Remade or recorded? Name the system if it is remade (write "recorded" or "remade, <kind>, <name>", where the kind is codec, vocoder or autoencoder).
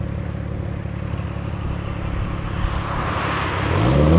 recorded